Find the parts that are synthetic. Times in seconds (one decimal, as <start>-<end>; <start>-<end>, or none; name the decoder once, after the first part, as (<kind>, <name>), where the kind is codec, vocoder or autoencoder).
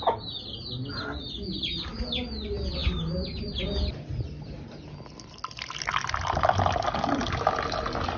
none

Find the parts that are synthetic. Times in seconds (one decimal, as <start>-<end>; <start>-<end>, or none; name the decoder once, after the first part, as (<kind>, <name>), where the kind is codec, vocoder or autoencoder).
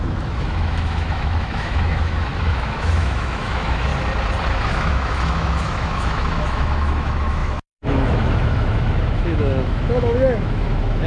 0.0-3.9 (autoencoder, DAC-VAE); 4.5-11.1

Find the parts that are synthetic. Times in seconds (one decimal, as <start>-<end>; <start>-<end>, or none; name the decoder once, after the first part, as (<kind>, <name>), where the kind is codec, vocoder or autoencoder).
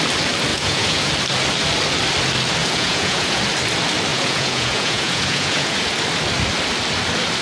0.5-1.1 (vocoder, Vocos); 2.6-3.4; 4.1-5.9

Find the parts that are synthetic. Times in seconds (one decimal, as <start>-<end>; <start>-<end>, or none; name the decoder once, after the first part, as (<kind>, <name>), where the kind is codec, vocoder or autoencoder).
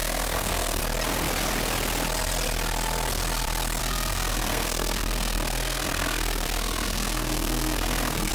0.0-0.8 (codec, SNAC); 3.8-8.3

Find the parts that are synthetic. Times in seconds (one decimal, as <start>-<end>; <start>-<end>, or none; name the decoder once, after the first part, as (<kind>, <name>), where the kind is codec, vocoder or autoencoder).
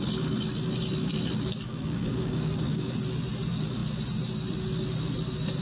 1.7-2.9 (codec, DAC)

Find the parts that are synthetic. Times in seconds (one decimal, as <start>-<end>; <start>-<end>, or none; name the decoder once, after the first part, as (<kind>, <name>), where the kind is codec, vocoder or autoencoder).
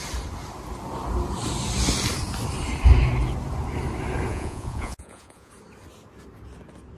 4.3-5.5 (vocoder, Vocos)